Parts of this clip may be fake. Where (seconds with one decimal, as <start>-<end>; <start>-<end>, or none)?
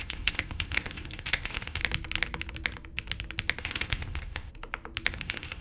0.0-1.8; 3.6-4.5; 5.1-5.6